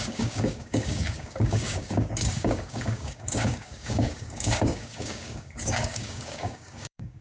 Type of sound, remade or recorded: remade